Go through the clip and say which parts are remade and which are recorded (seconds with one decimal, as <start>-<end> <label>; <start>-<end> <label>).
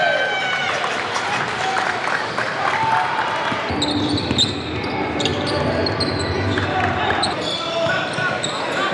0.0-8.9 recorded